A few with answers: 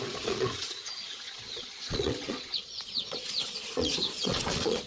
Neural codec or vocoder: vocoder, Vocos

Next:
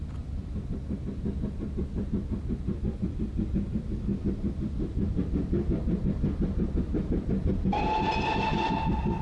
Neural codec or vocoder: none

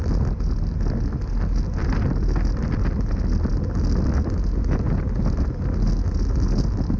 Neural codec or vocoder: none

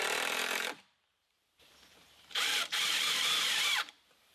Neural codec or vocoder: vocoder, BigVGAN v2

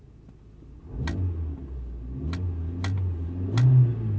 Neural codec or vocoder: none